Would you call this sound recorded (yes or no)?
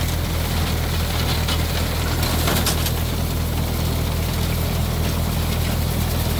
yes